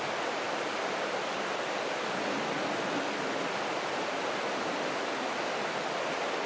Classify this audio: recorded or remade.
recorded